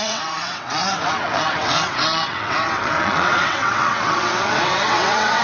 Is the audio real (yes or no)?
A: no